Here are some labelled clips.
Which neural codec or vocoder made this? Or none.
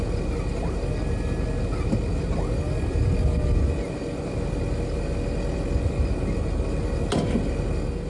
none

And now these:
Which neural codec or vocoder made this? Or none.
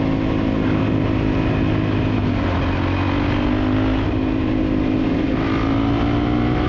none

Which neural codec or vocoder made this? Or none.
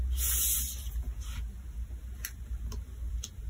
none